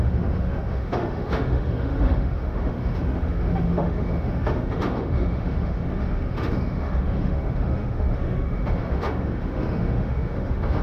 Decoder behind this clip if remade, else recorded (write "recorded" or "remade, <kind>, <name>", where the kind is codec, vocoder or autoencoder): remade, autoencoder, DAC-VAE